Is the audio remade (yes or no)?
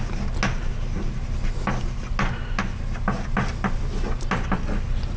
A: no